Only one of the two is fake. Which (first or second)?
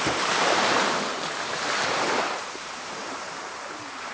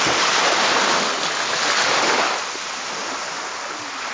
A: first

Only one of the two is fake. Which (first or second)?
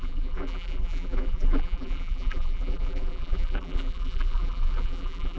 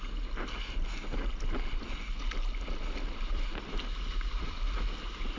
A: first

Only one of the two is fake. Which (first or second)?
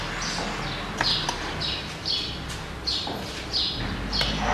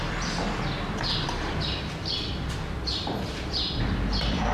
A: second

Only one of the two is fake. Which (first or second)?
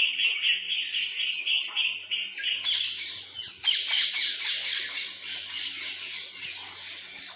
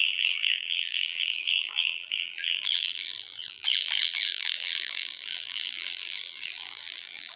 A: second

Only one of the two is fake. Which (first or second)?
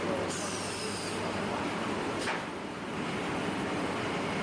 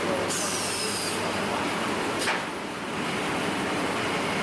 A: first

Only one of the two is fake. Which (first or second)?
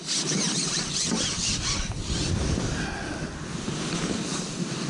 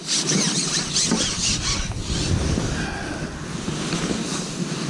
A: first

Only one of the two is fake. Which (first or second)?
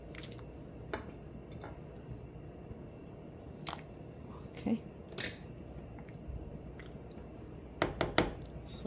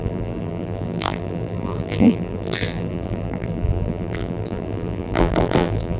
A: second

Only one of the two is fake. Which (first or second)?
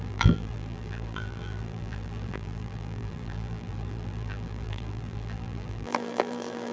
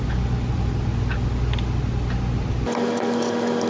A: first